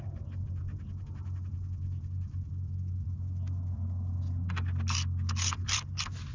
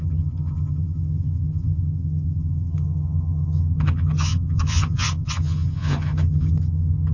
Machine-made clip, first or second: second